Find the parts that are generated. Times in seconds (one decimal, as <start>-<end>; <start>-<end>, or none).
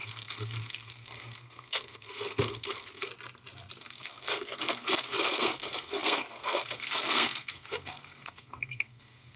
0.0-3.1; 3.8-9.4